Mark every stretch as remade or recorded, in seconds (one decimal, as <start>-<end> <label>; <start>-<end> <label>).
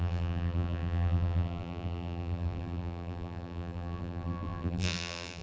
0.0-5.4 remade